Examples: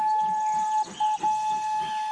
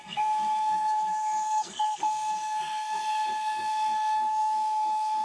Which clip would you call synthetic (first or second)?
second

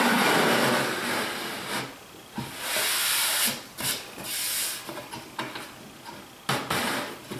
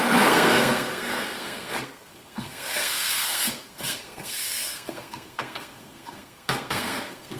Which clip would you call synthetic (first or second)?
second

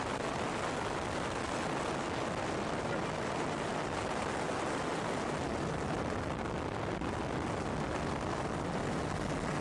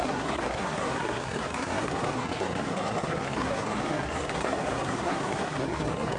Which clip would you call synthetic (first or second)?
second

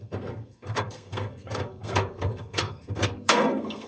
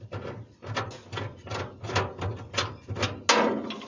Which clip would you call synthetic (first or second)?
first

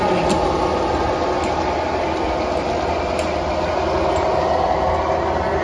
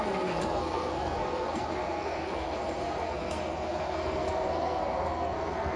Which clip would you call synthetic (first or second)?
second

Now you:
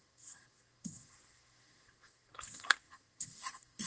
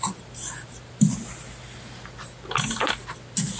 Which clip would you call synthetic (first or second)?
first